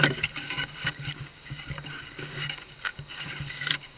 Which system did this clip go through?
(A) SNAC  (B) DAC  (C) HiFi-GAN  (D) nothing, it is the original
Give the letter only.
B